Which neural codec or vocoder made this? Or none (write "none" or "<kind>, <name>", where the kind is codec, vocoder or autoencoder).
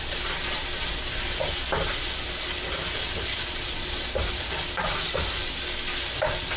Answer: none